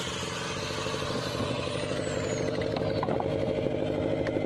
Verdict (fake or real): real